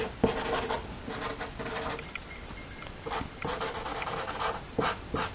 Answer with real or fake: real